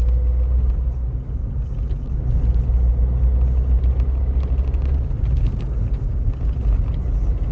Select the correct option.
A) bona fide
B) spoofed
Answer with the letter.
A